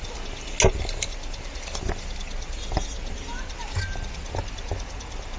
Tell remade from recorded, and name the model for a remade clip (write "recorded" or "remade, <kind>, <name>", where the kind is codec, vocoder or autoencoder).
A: recorded